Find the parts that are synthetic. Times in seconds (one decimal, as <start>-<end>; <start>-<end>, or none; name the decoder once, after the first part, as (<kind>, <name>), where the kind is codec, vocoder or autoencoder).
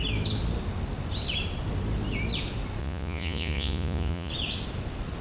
2.8-4.3 (vocoder, Vocos)